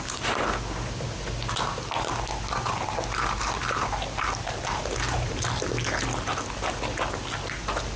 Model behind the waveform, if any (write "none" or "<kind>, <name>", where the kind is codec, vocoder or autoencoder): none